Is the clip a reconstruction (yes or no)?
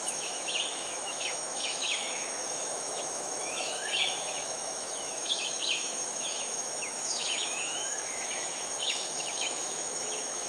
yes